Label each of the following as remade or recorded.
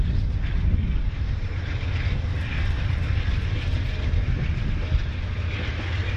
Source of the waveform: recorded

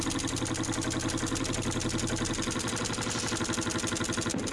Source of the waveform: recorded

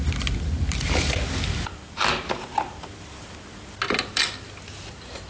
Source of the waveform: recorded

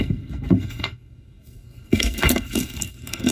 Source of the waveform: remade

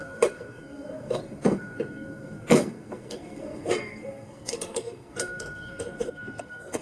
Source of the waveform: remade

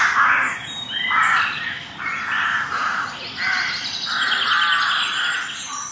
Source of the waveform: recorded